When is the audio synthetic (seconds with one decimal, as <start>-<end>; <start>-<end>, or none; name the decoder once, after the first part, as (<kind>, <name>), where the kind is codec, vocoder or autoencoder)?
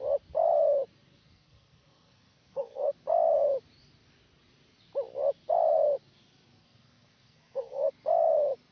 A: 1.2-2.9 (codec, SNAC); 6.6-7.9